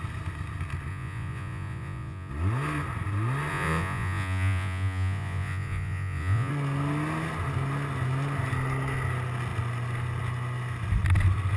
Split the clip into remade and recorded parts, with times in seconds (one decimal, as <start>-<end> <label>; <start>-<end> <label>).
0.0-0.9 recorded; 0.9-2.3 remade; 2.3-3.5 recorded; 3.5-6.5 remade; 6.5-11.6 recorded